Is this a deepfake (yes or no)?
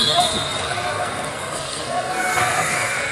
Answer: yes